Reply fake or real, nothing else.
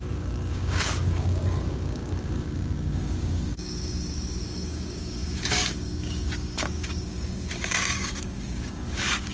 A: fake